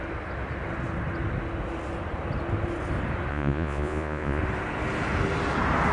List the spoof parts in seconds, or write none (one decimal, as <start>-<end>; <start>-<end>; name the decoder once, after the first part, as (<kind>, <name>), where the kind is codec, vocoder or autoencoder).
3.3-4.4 (vocoder, Vocos)